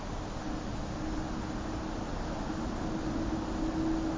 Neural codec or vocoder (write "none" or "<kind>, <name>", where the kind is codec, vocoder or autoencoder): none